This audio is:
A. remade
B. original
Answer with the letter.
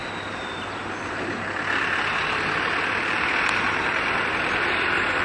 B